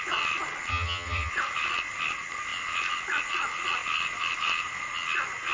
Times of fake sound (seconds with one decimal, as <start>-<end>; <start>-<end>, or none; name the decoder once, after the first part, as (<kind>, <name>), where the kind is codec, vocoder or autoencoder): 0.7-1.3 (vocoder, HiFi-GAN)